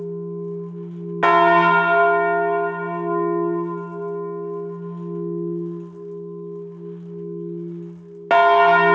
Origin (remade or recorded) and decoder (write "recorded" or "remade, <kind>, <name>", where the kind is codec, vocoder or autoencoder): recorded